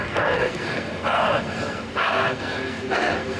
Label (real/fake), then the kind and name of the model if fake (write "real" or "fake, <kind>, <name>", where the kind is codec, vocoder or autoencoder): fake, codec, SNAC